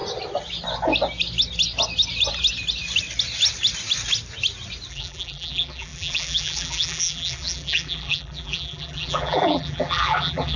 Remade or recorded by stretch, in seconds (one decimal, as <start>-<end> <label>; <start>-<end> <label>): 0.0-4.9 recorded; 4.9-10.6 remade